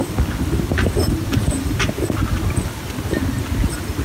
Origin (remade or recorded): recorded